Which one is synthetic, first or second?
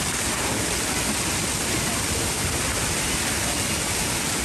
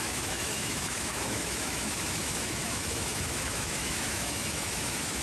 second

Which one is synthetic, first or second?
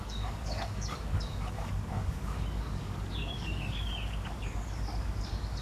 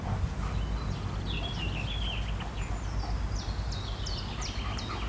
first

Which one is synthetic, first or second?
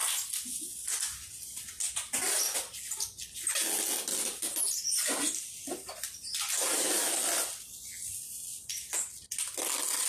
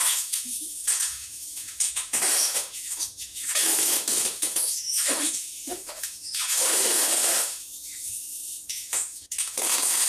second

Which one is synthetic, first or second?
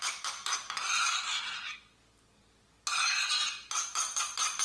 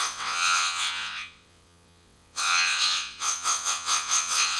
second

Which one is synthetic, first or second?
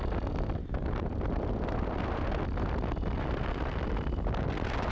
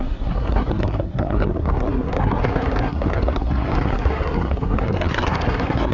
second